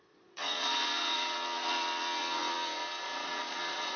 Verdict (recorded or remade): remade